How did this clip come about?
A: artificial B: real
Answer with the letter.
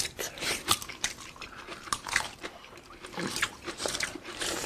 A